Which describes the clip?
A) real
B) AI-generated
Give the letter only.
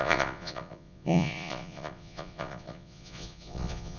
B